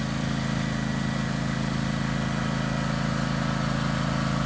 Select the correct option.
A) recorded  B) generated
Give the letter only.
A